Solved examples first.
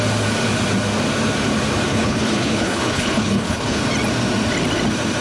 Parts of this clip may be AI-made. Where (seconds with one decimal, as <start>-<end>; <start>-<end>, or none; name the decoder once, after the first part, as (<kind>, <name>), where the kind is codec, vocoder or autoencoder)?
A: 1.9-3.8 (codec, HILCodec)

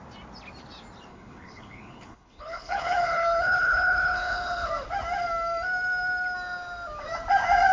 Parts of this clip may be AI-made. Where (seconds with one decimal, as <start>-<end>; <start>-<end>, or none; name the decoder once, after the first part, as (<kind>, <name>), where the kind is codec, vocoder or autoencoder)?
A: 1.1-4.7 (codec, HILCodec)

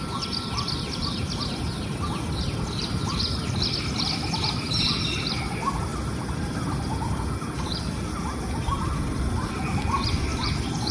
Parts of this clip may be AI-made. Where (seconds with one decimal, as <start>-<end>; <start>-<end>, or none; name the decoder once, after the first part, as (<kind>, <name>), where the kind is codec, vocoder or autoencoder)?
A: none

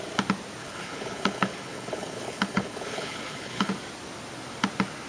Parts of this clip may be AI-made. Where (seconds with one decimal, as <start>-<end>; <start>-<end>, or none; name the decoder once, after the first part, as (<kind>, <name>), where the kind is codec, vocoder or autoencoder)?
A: 0.6-3.7 (codec, HILCodec)